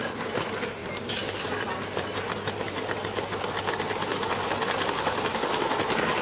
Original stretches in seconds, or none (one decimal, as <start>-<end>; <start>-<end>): 0.0-6.2